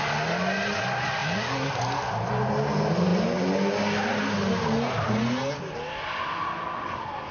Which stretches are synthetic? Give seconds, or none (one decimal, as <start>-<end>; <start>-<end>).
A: none